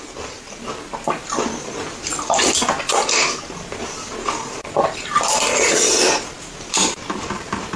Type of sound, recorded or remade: recorded